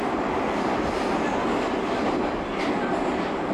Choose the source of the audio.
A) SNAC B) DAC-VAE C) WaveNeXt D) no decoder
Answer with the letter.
D